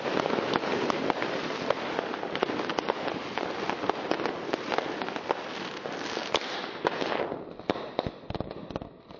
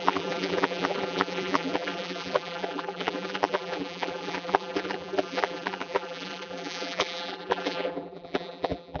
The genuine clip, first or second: first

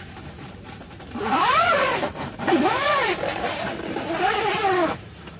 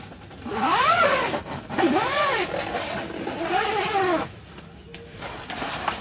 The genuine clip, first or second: second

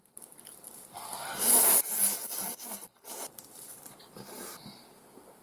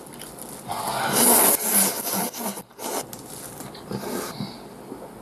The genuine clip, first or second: second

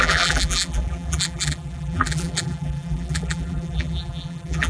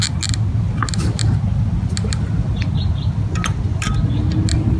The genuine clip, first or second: second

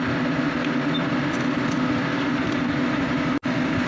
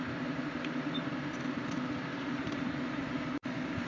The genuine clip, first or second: first